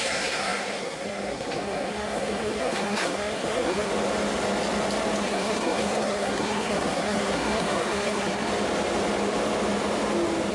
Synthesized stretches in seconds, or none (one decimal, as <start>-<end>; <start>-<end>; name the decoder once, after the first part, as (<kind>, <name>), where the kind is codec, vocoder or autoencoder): 0.0-3.9 (codec, SNAC); 5.2-8.5